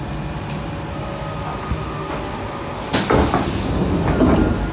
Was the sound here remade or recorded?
recorded